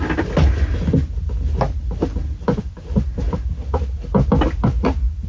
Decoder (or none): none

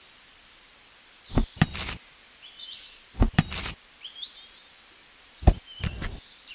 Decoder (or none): vocoder, BigVGAN v2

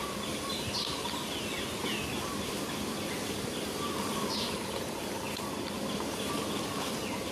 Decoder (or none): none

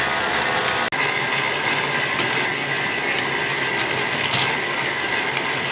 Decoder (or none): none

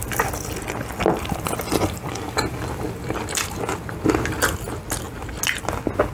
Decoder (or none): none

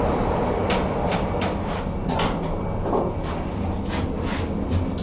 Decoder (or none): none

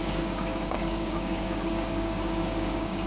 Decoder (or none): codec, DAC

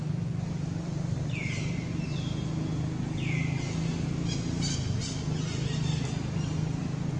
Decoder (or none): none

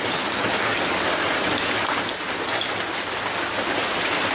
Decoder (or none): none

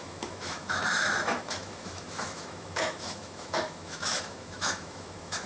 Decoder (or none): autoencoder, DAC-VAE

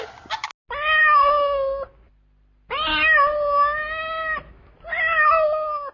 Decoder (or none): none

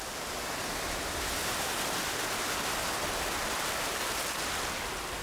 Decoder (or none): none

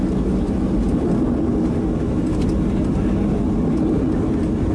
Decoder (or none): none